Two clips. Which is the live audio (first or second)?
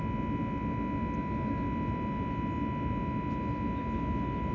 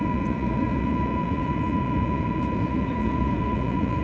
first